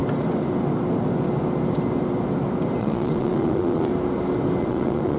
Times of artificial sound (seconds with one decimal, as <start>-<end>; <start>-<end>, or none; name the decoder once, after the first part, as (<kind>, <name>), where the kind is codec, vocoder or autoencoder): 2.8-3.9 (vocoder, Vocos); 4.6-5.2